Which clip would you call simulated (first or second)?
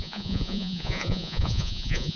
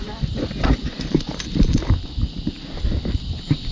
first